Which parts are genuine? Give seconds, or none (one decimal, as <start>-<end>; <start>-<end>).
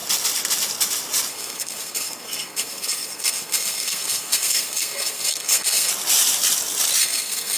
0.0-1.3; 5.9-7.0